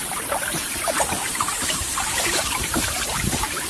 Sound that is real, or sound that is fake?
fake